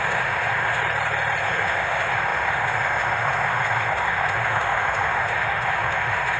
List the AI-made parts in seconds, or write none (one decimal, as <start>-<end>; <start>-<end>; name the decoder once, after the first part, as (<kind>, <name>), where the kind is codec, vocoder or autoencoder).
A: 0.0-0.8 (autoencoder, DAC-VAE); 1.4-6.4